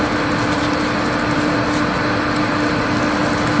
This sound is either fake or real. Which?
real